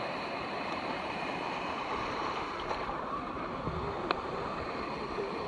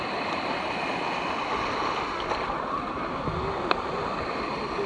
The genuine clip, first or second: second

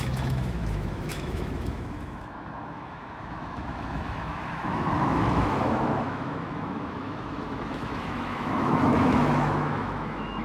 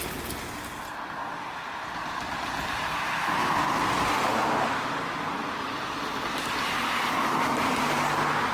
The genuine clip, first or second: second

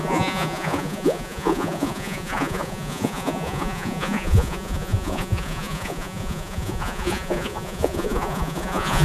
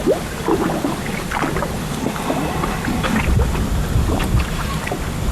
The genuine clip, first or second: second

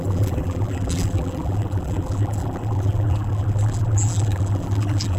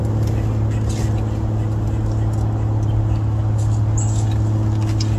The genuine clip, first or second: second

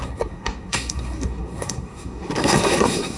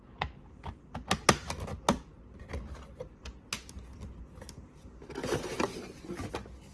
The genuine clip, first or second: second